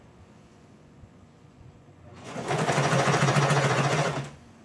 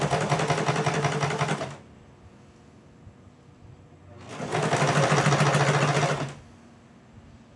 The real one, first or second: second